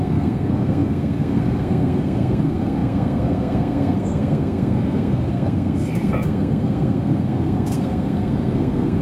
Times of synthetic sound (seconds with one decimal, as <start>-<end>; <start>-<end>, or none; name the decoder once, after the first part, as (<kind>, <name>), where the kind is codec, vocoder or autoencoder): 0.0-9.0 (codec, SNAC)

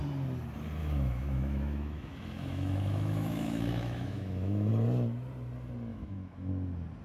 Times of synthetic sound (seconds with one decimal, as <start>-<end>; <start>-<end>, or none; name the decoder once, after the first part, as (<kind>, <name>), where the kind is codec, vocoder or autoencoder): 0.8-4.7 (autoencoder, DAC-VAE); 5.9-6.5

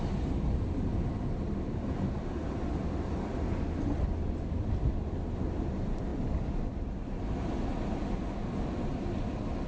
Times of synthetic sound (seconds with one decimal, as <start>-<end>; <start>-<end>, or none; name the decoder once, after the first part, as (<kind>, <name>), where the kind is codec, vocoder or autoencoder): none

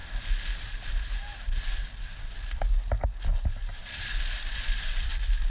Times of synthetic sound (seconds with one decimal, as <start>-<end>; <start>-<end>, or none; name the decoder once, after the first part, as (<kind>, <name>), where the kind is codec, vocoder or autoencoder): 3.8-5.1 (vocoder, BigVGAN v2)

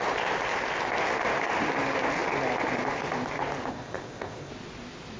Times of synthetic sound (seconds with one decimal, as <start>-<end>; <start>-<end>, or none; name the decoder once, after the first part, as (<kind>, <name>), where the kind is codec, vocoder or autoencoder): 3.7-4.5 (codec, ZipCodec)

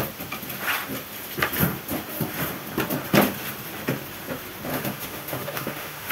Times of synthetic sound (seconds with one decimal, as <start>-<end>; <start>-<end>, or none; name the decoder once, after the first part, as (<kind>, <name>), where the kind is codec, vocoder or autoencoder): 4.7-6.1 (autoencoder, DAC-VAE)

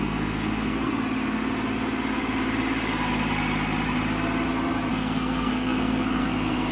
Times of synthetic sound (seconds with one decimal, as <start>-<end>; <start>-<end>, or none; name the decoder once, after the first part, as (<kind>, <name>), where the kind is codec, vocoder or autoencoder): 0.0-0.9 (codec, SNAC); 4.9-6.7